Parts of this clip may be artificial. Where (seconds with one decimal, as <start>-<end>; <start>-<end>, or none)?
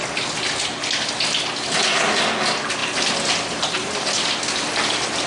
none